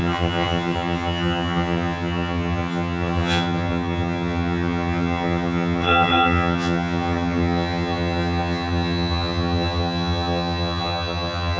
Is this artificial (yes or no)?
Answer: yes